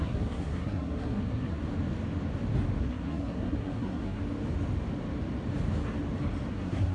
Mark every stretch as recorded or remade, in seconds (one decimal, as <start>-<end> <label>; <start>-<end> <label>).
0.0-1.6 remade; 1.6-2.8 recorded; 2.8-4.2 remade; 4.2-6.5 recorded; 6.5-6.9 remade